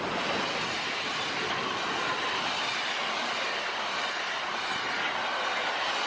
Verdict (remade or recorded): recorded